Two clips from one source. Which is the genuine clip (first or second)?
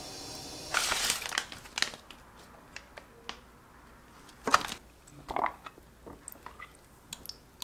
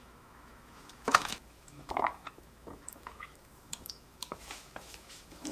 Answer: first